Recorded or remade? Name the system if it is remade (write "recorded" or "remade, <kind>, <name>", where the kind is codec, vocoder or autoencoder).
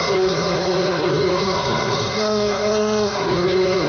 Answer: remade, codec, SNAC